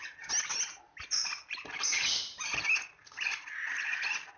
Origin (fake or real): real